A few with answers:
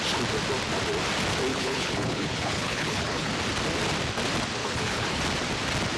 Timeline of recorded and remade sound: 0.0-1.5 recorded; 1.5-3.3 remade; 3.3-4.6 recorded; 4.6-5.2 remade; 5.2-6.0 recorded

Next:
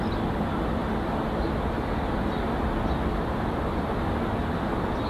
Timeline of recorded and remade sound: 0.0-5.1 recorded

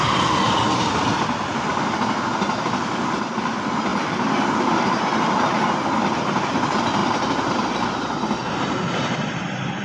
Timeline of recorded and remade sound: 0.0-3.9 recorded; 3.9-6.5 remade; 6.5-7.0 recorded; 7.0-8.4 remade; 8.4-9.8 recorded

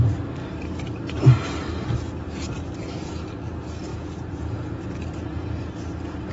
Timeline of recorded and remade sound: 0.0-3.9 recorded; 3.9-4.8 remade; 4.8-6.3 recorded